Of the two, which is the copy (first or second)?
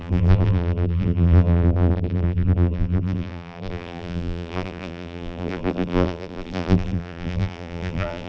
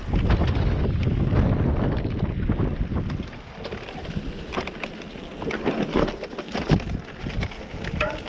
first